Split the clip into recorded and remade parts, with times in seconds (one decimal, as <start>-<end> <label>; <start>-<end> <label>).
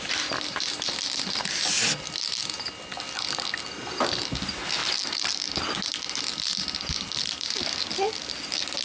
0.0-8.8 recorded